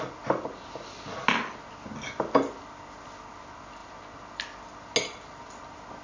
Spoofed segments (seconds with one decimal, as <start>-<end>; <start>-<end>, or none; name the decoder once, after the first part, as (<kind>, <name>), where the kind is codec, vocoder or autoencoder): none